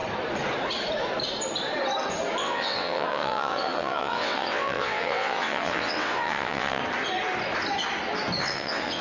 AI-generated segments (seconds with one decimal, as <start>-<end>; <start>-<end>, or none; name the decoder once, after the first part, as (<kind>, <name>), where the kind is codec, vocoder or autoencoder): 2.4-6.8 (vocoder, WaveNeXt); 8.4-9.0